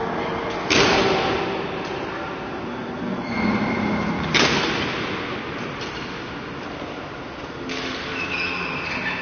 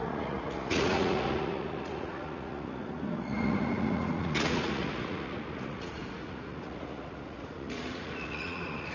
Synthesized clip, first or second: second